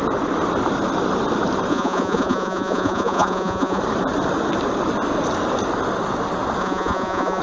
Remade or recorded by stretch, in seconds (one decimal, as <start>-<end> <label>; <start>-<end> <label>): 0.0-1.7 recorded; 1.7-3.8 remade; 3.8-6.6 recorded; 6.6-7.4 remade